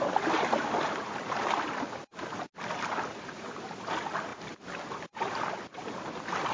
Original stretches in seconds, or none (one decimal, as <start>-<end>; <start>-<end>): 0.0-6.5